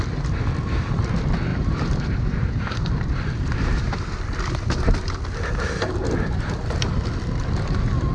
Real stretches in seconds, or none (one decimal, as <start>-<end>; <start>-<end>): 0.0-1.5; 3.8-8.1